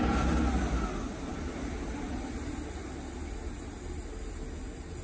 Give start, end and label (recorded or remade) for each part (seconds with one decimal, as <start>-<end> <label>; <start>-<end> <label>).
0.0-5.0 recorded